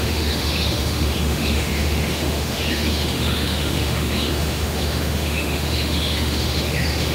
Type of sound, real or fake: fake